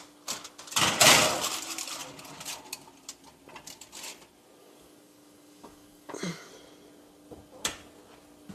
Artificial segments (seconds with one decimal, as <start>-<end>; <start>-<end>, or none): 4.6-6.5